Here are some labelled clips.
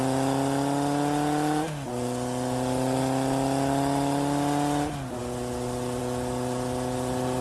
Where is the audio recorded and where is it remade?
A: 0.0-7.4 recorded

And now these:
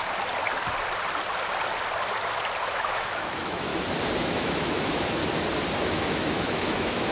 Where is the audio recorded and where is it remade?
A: 0.0-2.7 recorded; 2.7-3.7 remade; 3.7-4.2 recorded; 4.2-5.2 remade; 5.2-5.8 recorded; 5.8-7.1 remade

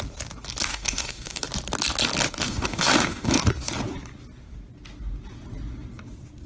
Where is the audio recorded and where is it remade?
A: 0.0-0.7 recorded; 0.7-1.4 remade; 1.4-2.4 recorded; 2.4-3.4 remade; 3.4-6.5 recorded

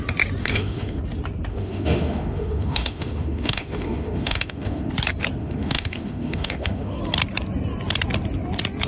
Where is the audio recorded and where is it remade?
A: 0.0-0.4 recorded; 0.4-1.0 remade; 1.0-1.5 recorded; 1.5-4.9 remade; 4.9-5.4 recorded; 5.4-7.0 remade; 7.0-8.9 recorded

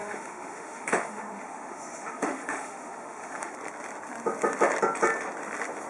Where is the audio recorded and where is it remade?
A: 0.0-3.5 remade; 3.5-5.9 recorded

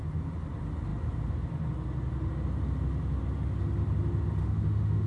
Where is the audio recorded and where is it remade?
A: 0.0-4.4 recorded; 4.4-5.1 remade